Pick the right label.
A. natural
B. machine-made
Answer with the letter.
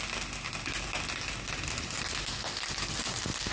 A